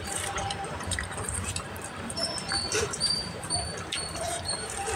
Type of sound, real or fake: fake